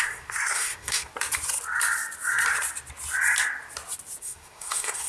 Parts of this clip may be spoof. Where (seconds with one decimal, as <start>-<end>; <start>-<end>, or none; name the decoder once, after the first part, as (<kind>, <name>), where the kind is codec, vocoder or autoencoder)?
0.0-1.1 (codec, SNAC); 4.2-5.1